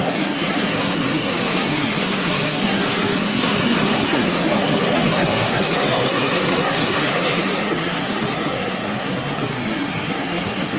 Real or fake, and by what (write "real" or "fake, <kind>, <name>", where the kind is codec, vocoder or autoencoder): fake, codec, SNAC